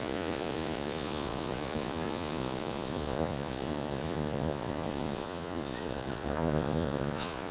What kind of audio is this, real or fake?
fake